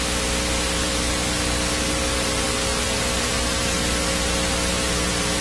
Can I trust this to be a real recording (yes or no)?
yes